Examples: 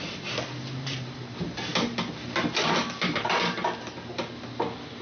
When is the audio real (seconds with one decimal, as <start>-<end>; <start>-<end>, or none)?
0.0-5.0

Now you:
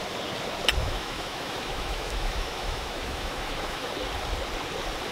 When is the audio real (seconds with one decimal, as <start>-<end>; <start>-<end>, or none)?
0.0-0.8; 3.9-5.1

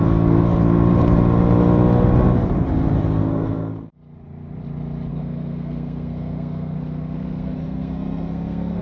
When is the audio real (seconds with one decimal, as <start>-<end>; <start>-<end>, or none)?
0.0-3.2; 3.9-5.1